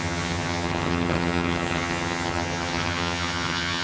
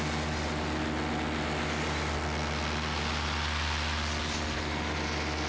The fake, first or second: first